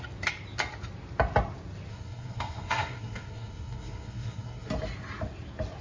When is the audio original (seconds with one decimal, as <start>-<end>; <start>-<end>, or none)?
0.0-1.9; 4.7-5.8